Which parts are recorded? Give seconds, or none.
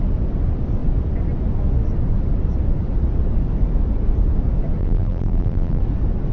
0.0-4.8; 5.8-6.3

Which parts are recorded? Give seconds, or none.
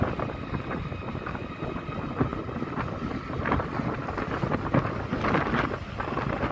0.0-6.5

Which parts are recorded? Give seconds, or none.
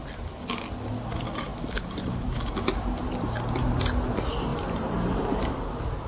0.0-1.5; 4.1-4.5; 5.5-6.1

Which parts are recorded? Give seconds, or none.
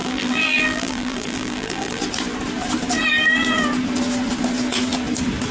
2.0-5.5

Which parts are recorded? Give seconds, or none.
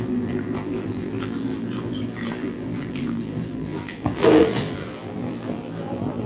none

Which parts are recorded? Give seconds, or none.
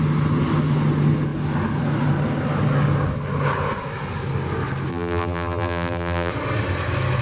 0.0-4.9; 6.3-7.2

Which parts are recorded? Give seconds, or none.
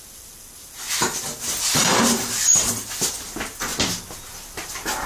0.0-1.8; 2.7-5.1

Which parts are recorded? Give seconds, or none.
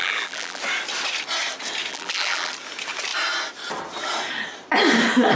0.6-1.9; 2.5-5.4